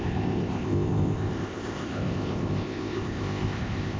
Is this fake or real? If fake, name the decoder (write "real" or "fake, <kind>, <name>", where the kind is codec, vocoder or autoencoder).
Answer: fake, codec, ZipCodec